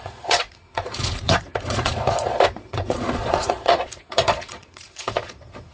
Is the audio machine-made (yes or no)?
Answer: yes